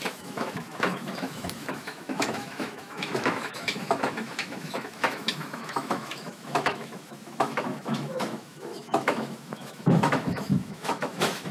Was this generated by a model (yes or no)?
yes